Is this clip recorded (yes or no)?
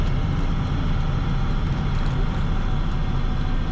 yes